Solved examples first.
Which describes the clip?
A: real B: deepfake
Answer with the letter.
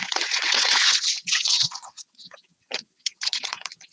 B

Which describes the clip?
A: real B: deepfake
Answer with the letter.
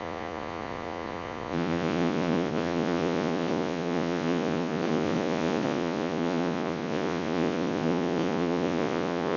B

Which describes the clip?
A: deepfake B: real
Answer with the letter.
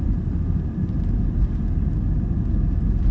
B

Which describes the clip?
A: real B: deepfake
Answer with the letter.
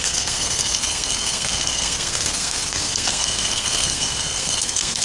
B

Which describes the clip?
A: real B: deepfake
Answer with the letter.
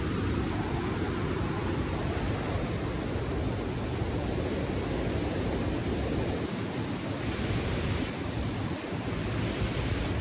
A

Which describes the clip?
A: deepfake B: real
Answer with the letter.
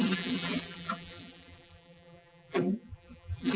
A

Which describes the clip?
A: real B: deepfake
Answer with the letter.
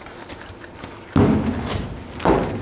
A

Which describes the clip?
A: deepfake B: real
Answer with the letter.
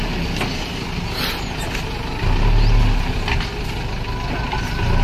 B